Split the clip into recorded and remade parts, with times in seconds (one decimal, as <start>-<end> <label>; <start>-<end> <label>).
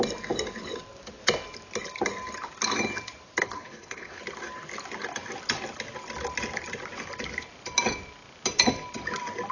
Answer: 0.0-3.4 recorded; 3.4-4.2 remade; 4.2-9.5 recorded